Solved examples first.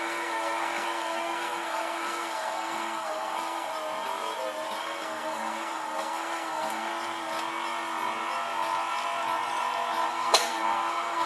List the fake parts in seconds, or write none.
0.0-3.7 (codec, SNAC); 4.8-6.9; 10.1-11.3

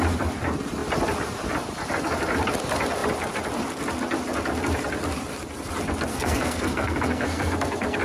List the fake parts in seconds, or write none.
6.1-8.0 (codec, SNAC)